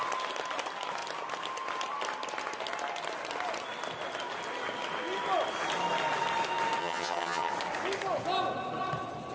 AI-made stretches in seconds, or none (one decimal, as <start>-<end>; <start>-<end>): 6.8-7.5